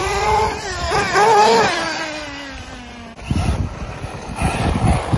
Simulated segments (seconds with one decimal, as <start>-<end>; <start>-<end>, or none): 0.0-0.6

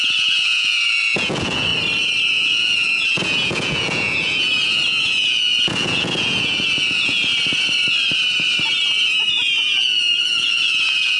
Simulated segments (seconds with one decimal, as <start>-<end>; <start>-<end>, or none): 0.0-1.7; 2.3-7.3; 9.2-11.2

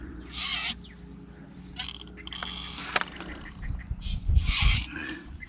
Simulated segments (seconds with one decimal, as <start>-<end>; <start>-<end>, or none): 0.0-0.5; 3.8-5.5

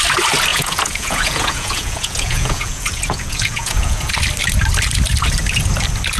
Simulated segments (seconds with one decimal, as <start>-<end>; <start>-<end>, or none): 0.5-4.1

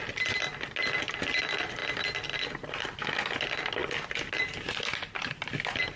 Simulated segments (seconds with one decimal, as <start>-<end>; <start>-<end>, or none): none

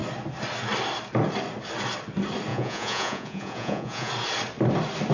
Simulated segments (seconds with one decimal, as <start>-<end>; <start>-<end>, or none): 2.5-4.1

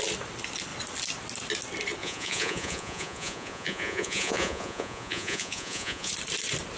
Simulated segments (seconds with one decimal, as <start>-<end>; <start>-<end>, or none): 2.0-6.1